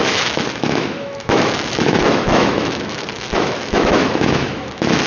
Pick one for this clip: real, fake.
fake